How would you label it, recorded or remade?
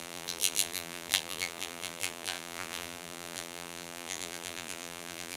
remade